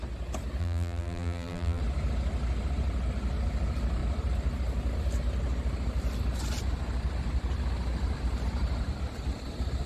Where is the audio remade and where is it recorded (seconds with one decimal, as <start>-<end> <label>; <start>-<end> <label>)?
0.0-0.6 recorded; 0.6-1.8 remade; 1.8-9.9 recorded